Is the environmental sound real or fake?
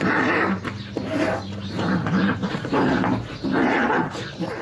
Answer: fake